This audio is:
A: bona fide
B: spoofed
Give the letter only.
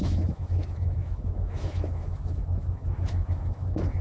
B